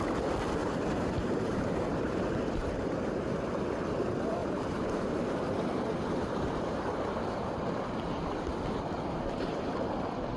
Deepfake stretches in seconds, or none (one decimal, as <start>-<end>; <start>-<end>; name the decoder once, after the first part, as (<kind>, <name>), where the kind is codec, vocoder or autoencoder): 0.6-3.6 (vocoder, BigVGAN v2); 4.4-7.3